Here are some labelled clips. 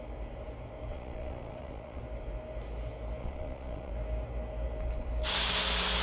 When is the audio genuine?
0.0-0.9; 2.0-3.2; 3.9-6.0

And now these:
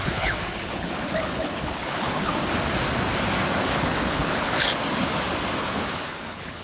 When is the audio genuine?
2.3-3.6; 4.7-5.6

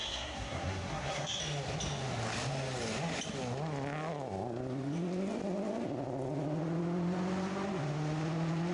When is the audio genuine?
1.4-8.7